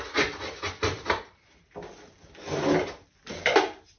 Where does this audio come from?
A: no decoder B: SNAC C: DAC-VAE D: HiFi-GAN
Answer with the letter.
A